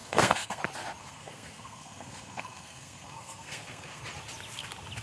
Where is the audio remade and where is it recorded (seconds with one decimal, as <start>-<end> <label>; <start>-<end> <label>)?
0.0-0.6 remade; 0.6-1.0 recorded; 1.0-4.0 remade; 4.0-5.0 recorded